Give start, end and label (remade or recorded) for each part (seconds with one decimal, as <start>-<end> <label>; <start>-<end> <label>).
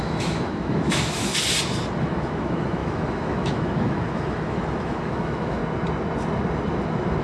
0.0-1.3 remade; 1.3-2.0 recorded; 2.0-5.6 remade; 5.6-7.2 recorded